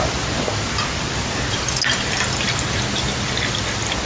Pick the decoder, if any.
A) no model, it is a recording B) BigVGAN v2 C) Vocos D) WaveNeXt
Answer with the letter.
A